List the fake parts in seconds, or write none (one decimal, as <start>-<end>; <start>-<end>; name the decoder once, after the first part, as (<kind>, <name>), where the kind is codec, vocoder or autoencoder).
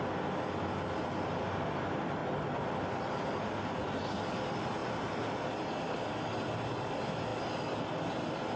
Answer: 2.2-2.8 (vocoder, BigVGAN v2); 7.3-7.8